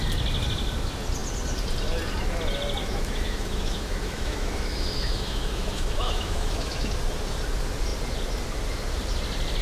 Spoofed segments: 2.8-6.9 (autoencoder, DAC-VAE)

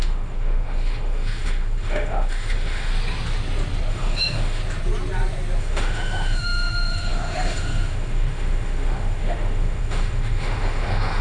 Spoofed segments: 0.0-2.9 (autoencoder, DAC-VAE); 3.9-4.6; 5.6-11.2

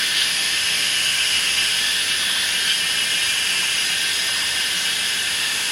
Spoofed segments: 0.0-2.0 (autoencoder, DAC-VAE); 5.3-5.7

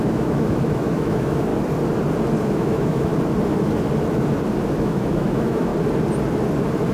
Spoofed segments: 0.0-1.5 (autoencoder, DAC-VAE); 2.5-3.1; 4.8-5.7

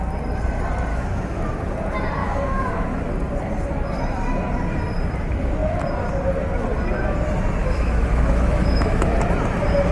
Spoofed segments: 0.9-1.4 (autoencoder, DAC-VAE); 2.2-3.1; 7.6-9.1

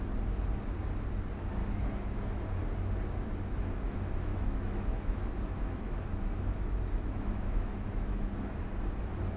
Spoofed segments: 1.6-2.4 (autoencoder, DAC-VAE); 4.3-8.6

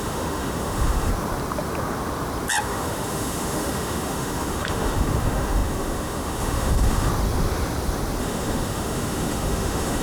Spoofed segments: 0.0-1.1 (autoencoder, DAC-VAE); 2.6-7.1; 8.2-10.0